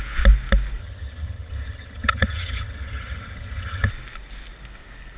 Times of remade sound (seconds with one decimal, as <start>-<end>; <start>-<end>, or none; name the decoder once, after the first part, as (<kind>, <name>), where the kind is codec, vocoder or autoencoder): 0.8-3.9 (vocoder, HiFi-GAN)